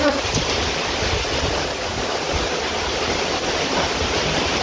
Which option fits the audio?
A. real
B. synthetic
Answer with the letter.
A